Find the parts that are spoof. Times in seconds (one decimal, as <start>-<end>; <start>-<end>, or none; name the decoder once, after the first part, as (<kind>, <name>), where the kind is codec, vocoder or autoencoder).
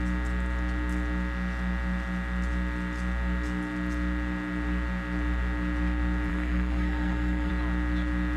6.3-7.5 (codec, SNAC)